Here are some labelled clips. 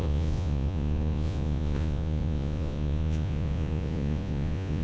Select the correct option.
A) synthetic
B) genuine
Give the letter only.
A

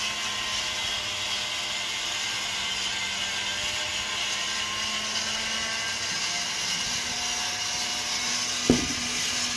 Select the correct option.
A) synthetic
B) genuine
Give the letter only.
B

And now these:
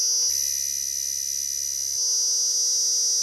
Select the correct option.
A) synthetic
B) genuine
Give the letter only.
B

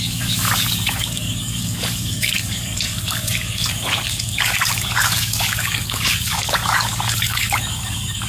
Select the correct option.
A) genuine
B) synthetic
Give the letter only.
B